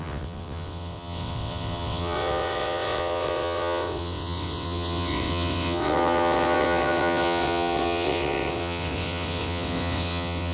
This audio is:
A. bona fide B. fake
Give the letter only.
B